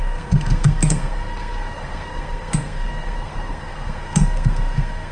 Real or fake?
fake